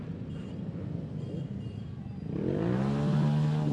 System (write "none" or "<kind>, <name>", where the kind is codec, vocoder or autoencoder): none